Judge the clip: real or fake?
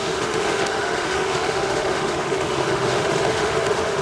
fake